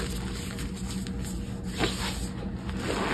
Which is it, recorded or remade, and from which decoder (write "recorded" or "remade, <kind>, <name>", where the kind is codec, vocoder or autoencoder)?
recorded